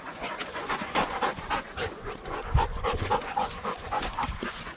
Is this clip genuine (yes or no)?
no